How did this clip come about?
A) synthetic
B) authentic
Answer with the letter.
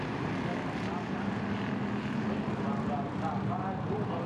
B